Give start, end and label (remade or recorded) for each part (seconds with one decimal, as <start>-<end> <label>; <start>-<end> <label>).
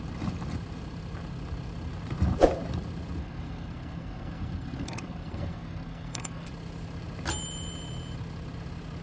0.0-3.2 recorded; 3.2-6.5 remade; 6.5-9.0 recorded